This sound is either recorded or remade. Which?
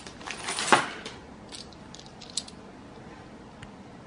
recorded